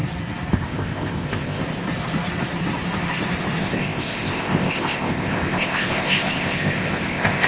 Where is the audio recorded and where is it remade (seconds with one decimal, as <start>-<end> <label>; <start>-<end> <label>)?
0.0-0.5 recorded; 0.5-1.6 remade; 1.6-3.6 recorded; 3.6-7.5 remade